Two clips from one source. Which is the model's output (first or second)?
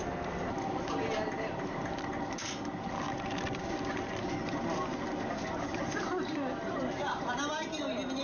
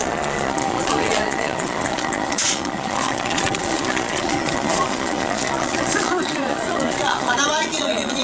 second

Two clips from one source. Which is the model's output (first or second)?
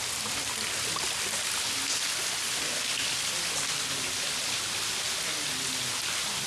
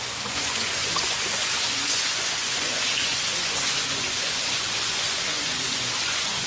second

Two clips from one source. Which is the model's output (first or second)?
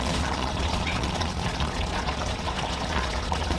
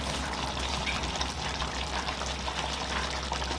first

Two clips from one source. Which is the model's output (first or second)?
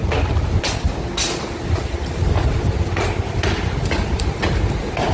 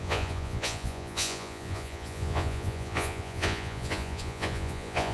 second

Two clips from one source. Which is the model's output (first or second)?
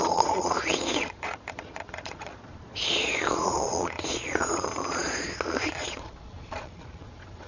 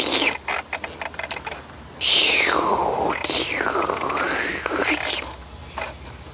first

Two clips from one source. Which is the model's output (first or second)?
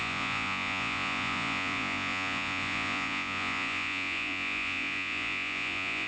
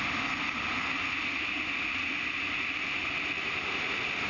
first